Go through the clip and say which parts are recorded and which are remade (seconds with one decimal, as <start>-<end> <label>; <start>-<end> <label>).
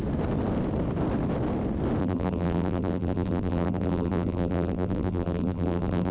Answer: 0.0-2.0 recorded; 2.0-6.1 remade